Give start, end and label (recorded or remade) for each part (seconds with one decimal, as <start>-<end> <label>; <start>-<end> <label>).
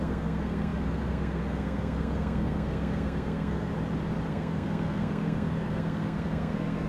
0.0-3.7 remade; 3.7-4.3 recorded; 4.3-6.9 remade